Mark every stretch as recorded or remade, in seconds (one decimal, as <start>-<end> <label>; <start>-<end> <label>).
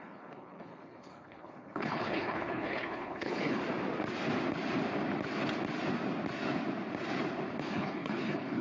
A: 0.0-3.6 remade; 3.6-7.6 recorded; 7.6-8.6 remade